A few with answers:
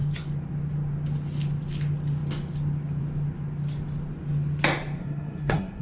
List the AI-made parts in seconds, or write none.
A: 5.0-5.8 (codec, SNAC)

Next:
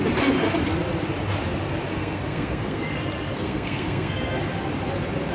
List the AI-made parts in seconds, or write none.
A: 1.9-4.4 (codec, SNAC)

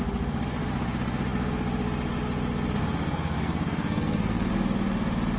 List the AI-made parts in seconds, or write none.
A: 3.0-4.5 (codec, SNAC)

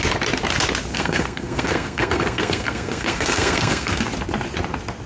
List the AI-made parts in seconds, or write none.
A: 0.9-4.0 (codec, SNAC)

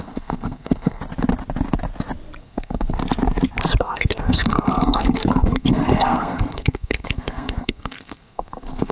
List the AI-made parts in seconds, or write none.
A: 0.0-1.0 (codec, SNAC); 2.4-3.0; 3.8-8.9